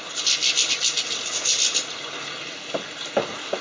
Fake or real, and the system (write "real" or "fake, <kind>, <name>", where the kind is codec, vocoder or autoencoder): real